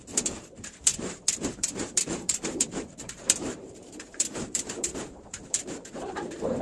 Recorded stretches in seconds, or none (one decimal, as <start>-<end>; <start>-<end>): none

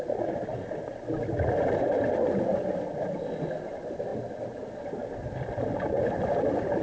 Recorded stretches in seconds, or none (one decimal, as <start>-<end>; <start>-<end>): 0.0-6.8

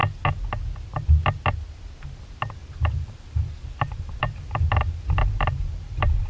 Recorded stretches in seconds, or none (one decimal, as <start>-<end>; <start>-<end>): 0.0-2.6